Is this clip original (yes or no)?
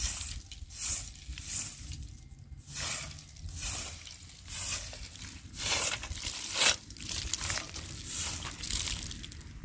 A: yes